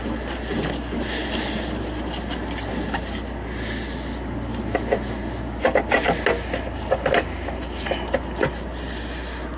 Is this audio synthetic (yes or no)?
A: no